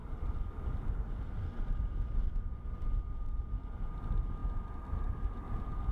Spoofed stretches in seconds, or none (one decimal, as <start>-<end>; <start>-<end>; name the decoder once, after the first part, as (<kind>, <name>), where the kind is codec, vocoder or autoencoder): none